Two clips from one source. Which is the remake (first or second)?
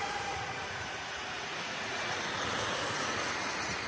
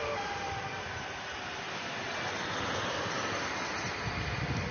first